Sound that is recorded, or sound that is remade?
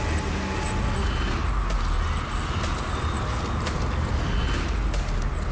recorded